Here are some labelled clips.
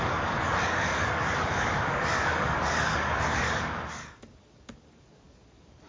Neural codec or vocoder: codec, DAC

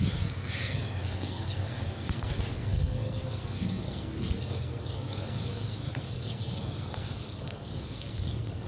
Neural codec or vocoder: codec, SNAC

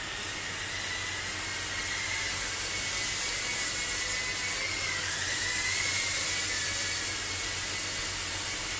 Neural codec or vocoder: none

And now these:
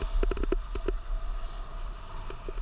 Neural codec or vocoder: none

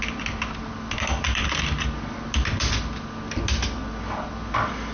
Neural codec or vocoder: none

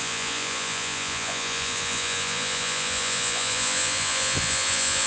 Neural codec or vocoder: vocoder, Vocos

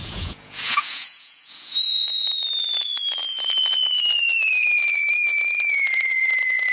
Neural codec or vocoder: vocoder, Vocos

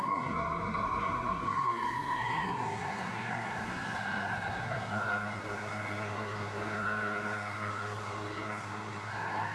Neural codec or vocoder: codec, SNAC